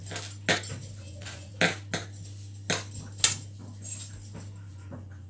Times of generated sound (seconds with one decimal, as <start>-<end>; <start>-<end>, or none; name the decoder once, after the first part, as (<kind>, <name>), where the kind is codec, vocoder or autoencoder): 1.0-1.5 (vocoder, Vocos); 4.7-5.3